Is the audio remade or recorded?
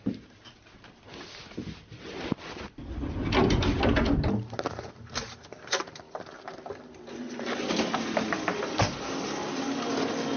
recorded